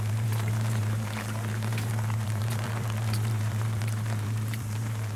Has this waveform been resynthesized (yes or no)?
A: yes